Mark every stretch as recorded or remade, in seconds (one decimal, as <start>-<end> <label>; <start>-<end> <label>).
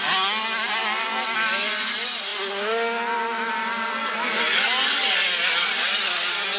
0.0-6.6 recorded